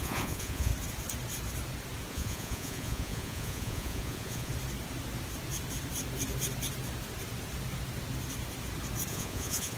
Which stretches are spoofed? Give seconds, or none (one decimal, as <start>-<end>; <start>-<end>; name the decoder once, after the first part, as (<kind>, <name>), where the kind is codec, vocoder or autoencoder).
0.0-0.7 (vocoder, Vocos); 2.1-4.5; 9.1-9.8